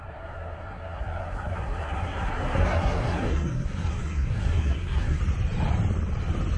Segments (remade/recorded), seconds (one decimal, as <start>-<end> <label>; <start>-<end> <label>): 0.0-5.2 remade; 5.2-6.6 recorded